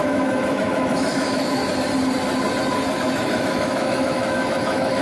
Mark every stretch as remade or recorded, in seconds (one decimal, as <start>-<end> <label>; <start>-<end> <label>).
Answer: 0.0-1.6 remade; 1.6-3.0 recorded; 3.0-5.0 remade